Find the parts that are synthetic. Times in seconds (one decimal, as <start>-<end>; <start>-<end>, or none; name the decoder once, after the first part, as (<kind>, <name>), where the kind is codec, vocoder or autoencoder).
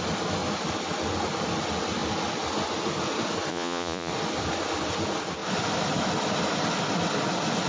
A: 3.5-4.1 (vocoder, Vocos)